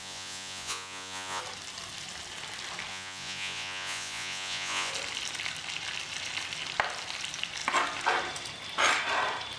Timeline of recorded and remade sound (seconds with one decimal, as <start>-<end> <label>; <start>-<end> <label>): 0.0-1.4 remade; 1.4-2.9 recorded; 2.9-4.9 remade; 4.9-9.6 recorded

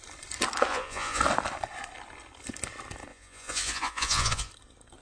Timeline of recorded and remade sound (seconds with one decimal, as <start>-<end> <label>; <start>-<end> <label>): 0.0-0.7 recorded; 0.7-1.2 remade; 1.2-3.1 recorded; 3.1-4.5 remade; 4.5-5.0 recorded

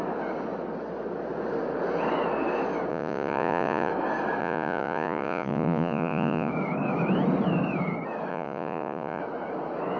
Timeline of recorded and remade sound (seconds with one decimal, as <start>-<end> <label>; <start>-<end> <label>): 0.0-2.9 recorded; 2.9-3.9 remade; 3.9-4.4 recorded; 4.4-6.5 remade; 6.5-8.3 recorded; 8.3-9.2 remade; 9.2-10.0 recorded

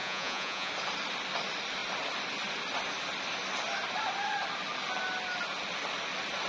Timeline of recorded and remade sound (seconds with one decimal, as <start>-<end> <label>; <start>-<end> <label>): 0.0-0.7 remade; 0.7-6.5 recorded

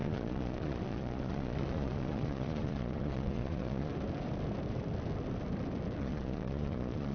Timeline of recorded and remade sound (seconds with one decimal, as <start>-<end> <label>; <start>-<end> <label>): 0.0-3.9 remade; 3.9-6.0 recorded; 6.0-7.1 remade

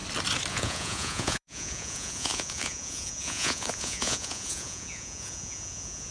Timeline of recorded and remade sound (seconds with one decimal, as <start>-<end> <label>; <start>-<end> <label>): 0.0-0.5 recorded; 0.5-6.1 remade

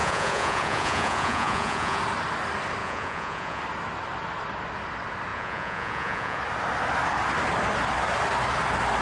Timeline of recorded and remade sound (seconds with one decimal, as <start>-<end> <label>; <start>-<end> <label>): 0.0-2.0 remade; 2.0-2.8 recorded; 2.8-3.6 remade; 3.6-5.3 recorded; 5.3-6.4 remade; 6.4-9.0 recorded

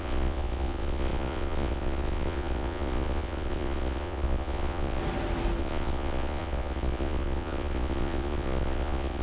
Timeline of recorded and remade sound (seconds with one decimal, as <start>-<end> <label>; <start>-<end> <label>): 0.0-5.0 remade; 5.0-5.6 recorded; 5.6-9.2 remade